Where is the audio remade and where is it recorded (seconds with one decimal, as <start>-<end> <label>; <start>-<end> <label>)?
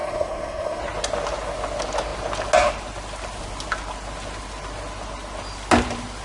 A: 0.0-0.8 remade; 0.8-6.2 recorded